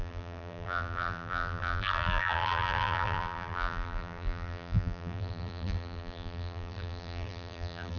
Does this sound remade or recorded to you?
remade